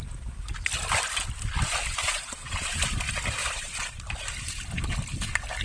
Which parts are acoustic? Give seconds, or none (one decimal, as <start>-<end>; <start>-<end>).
0.0-2.0; 2.8-3.4; 4.0-5.6